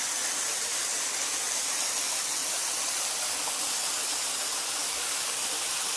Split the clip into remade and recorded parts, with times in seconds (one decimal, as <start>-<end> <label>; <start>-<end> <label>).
0.0-0.7 recorded; 0.7-1.3 remade; 1.3-4.8 recorded; 4.8-5.4 remade; 5.4-6.0 recorded